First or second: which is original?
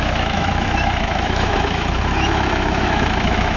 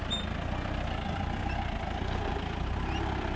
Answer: second